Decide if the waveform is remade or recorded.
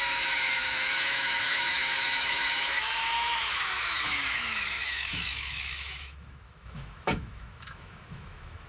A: remade